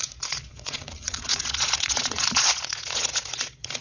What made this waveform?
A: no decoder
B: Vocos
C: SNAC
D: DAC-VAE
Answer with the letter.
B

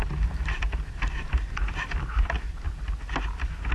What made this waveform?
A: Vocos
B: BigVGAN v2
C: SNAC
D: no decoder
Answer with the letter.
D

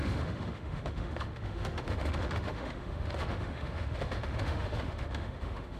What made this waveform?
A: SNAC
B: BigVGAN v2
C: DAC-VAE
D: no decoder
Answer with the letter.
C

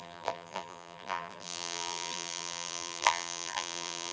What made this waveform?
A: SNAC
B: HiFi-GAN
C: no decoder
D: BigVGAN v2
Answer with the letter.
D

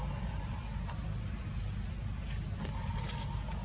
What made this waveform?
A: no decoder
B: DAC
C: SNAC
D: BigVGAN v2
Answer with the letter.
A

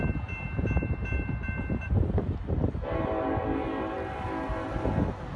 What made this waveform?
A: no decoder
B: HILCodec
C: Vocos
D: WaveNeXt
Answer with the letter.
A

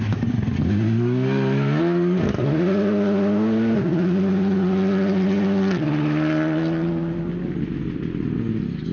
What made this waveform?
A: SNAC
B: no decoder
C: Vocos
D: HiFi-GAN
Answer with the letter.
B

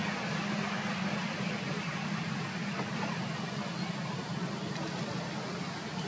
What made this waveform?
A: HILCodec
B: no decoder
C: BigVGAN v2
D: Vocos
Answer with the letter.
B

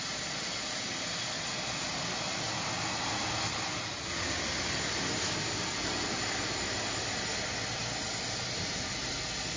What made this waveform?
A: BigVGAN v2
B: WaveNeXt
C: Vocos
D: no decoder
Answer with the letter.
D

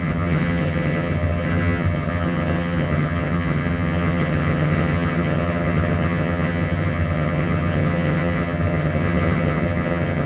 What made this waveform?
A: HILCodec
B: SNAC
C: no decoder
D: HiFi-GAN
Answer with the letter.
D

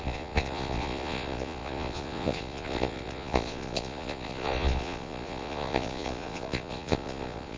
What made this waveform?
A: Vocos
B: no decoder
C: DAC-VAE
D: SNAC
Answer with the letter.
A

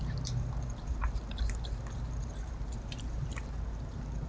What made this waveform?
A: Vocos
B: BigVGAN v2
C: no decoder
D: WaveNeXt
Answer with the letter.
B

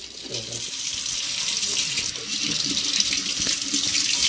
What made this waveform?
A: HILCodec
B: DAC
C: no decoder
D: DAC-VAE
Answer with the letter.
C